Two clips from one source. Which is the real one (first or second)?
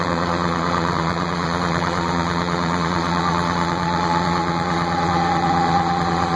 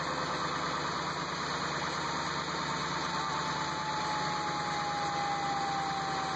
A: second